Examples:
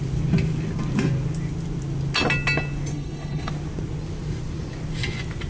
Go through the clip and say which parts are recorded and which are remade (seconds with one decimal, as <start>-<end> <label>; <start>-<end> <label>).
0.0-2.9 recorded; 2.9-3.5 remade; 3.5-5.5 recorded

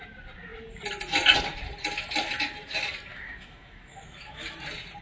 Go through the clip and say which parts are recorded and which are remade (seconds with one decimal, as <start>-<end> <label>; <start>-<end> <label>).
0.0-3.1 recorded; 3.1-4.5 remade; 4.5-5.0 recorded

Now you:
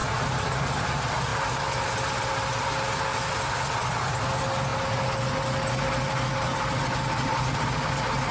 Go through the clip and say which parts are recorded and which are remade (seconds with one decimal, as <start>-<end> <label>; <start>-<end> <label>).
0.0-8.3 recorded

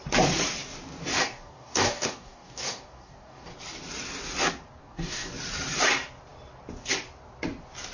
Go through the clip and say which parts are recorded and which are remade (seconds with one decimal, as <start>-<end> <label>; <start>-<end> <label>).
0.0-1.2 recorded; 1.2-3.5 remade; 3.5-4.8 recorded; 4.8-5.3 remade; 5.3-7.9 recorded